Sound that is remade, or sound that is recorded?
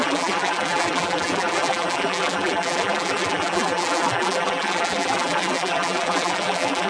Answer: remade